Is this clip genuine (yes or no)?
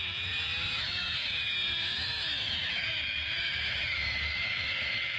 no